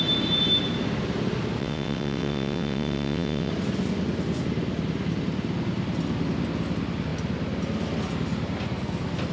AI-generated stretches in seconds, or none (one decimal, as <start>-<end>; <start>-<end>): 1.6-3.5